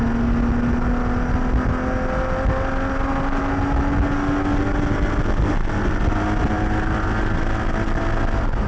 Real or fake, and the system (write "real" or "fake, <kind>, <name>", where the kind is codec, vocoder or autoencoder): real